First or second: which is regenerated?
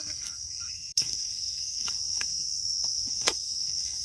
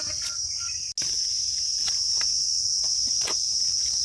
first